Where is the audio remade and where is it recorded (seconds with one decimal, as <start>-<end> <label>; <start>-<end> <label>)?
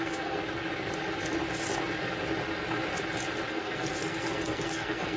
0.0-0.4 remade; 0.4-3.5 recorded; 3.5-5.2 remade